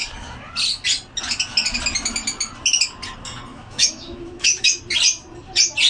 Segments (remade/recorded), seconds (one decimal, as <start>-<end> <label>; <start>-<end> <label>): 0.0-3.5 recorded; 3.5-4.8 remade; 4.8-5.9 recorded